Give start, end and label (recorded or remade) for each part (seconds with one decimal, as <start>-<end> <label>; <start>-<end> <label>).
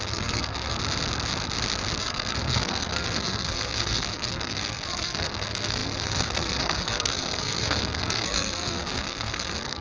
0.0-0.8 remade; 0.8-2.0 recorded; 2.0-9.8 remade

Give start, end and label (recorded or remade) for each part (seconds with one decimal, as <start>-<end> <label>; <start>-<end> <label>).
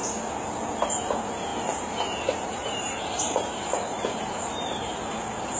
0.0-1.5 recorded; 1.5-4.9 remade; 4.9-5.6 recorded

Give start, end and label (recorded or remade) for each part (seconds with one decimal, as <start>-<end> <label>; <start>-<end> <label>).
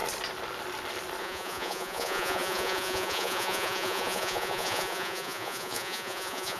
0.0-1.2 recorded; 1.2-6.6 remade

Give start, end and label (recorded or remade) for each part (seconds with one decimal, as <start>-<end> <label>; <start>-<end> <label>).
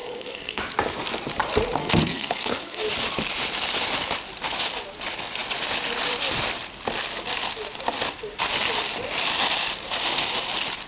0.0-0.6 remade; 0.6-1.8 recorded; 1.8-2.9 remade; 2.9-10.9 recorded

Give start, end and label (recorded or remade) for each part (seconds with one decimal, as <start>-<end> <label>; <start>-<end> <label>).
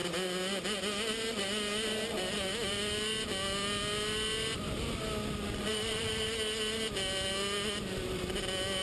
0.0-5.7 recorded; 5.7-6.3 remade; 6.3-8.8 recorded